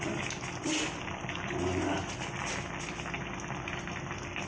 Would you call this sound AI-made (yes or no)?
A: no